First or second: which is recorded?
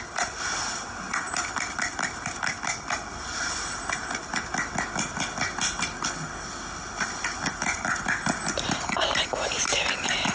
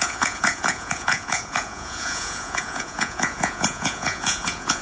first